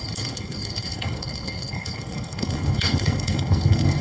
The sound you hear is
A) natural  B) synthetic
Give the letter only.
B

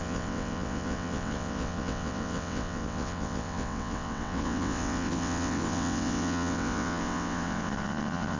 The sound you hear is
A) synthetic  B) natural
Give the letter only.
A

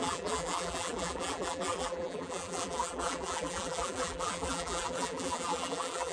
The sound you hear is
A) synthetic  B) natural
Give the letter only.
A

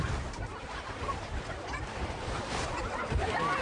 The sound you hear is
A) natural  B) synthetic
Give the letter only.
A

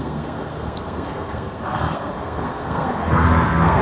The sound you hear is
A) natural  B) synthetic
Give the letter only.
B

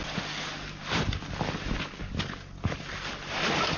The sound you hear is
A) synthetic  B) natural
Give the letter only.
B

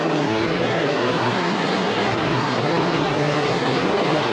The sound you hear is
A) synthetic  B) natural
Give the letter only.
A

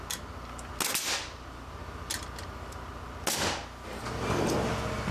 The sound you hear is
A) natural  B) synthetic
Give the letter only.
A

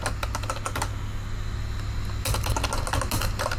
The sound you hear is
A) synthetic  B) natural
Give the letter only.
B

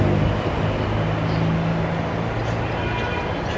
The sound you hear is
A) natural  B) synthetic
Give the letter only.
A